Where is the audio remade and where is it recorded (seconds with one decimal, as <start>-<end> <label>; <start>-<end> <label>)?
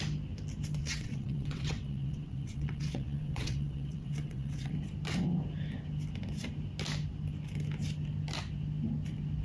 0.0-0.8 recorded; 0.8-4.7 remade; 4.7-9.4 recorded